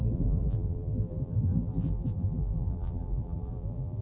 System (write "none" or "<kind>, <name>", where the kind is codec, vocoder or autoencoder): vocoder, BigVGAN v2